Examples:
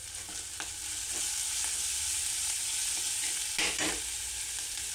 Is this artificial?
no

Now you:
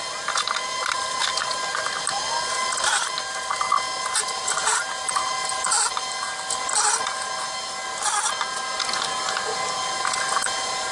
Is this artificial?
no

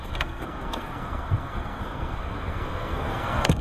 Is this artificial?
yes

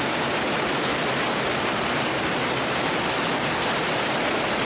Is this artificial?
no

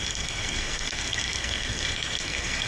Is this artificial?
yes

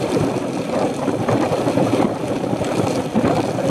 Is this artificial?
no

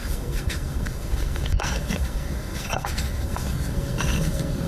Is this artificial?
yes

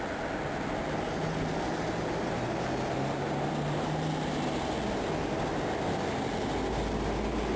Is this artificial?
no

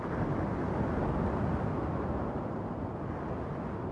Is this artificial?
no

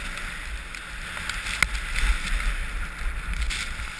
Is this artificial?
no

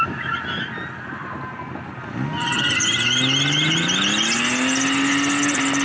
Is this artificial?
no